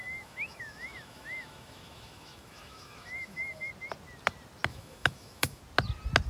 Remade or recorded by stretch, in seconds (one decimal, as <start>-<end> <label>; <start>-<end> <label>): 0.0-3.7 remade; 3.7-4.7 recorded; 4.7-5.6 remade; 5.6-6.3 recorded